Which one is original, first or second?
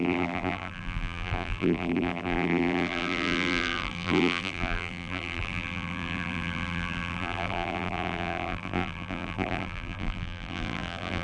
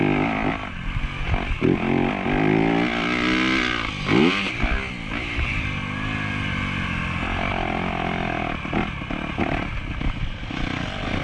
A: second